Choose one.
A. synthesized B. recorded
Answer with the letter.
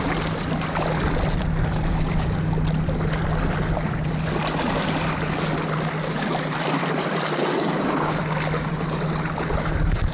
B